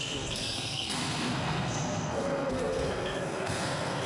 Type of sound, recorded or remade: remade